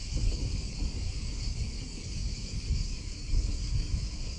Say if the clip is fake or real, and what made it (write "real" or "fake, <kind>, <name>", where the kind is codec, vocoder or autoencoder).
fake, codec, DAC